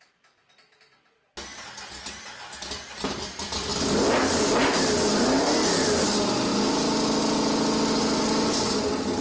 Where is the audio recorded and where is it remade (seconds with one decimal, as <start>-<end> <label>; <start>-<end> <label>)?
0.0-9.2 recorded